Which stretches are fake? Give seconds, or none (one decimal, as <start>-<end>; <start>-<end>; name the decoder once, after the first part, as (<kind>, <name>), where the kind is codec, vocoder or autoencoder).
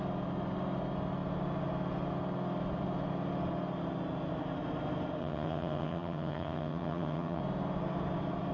5.2-7.4 (vocoder, HiFi-GAN)